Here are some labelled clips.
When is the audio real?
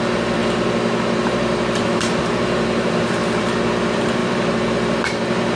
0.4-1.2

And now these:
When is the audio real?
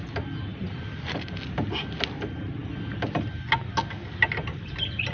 0.0-0.5; 1.4-5.1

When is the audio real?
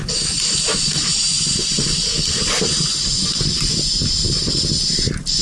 2.9-5.4